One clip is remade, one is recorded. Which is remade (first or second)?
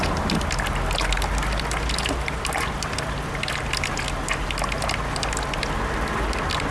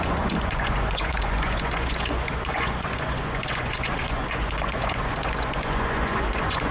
second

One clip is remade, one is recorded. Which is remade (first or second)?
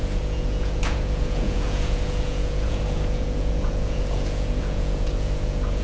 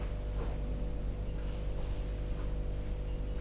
first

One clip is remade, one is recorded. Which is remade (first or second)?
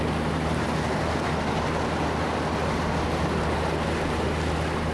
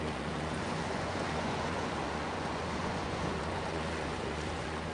second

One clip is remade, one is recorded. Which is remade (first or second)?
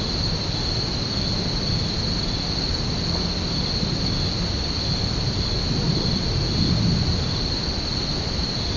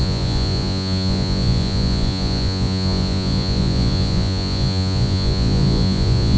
second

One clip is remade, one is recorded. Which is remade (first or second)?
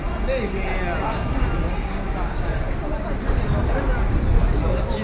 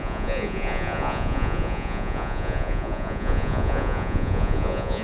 second